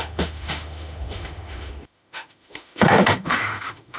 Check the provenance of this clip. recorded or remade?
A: remade